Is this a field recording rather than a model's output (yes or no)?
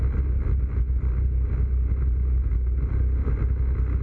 yes